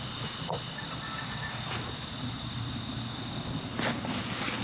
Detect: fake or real real